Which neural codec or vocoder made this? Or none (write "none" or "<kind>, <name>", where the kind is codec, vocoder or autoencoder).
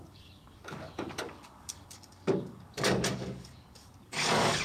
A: codec, DAC